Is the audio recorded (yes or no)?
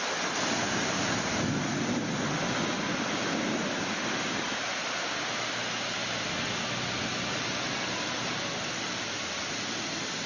yes